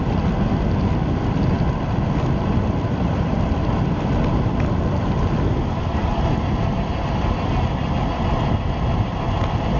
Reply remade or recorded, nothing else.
recorded